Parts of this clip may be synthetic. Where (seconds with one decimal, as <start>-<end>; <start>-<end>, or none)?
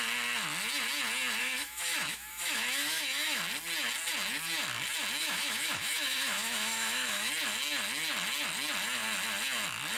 1.4-3.4; 5.2-7.3